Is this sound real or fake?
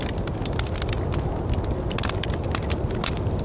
real